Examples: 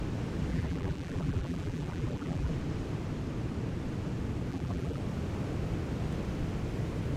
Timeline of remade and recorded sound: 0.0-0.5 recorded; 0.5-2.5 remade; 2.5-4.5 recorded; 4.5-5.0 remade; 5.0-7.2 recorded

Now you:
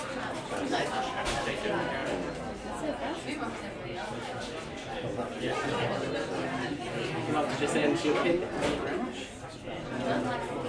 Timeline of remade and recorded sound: 0.0-10.7 recorded

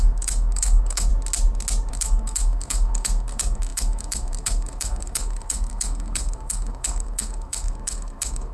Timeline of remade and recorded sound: 0.0-1.1 remade; 1.1-1.9 recorded; 1.9-8.5 remade

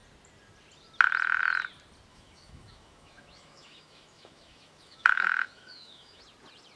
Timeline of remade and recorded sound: 0.0-2.1 recorded; 2.1-6.2 remade; 6.2-6.8 recorded

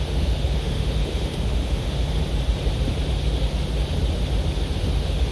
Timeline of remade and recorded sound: 0.0-2.2 remade; 2.2-4.8 recorded; 4.8-5.3 remade

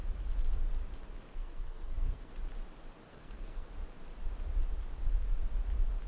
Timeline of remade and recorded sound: 0.0-1.3 recorded; 1.3-2.3 remade; 2.3-3.1 recorded; 3.1-3.7 remade; 3.7-6.1 recorded